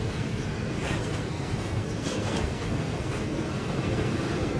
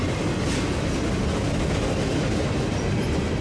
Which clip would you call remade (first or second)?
first